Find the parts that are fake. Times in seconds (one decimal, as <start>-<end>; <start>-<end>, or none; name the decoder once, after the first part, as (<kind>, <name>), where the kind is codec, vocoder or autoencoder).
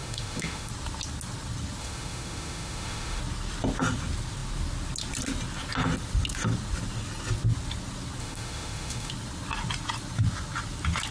0.0-0.7 (autoencoder, DAC-VAE); 1.8-3.2; 8.2-9.1